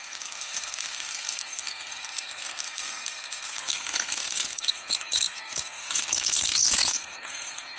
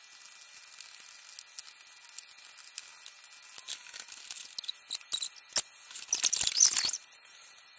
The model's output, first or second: first